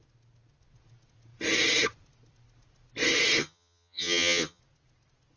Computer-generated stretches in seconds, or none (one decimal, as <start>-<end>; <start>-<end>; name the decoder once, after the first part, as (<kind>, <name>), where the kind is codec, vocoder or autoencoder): 3.4-4.6 (vocoder, HiFi-GAN)